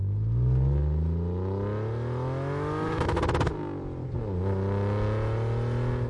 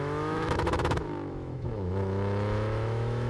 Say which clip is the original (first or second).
first